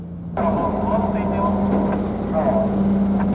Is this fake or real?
real